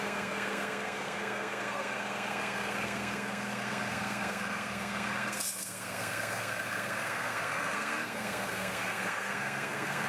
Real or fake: fake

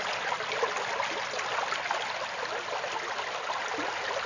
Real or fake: real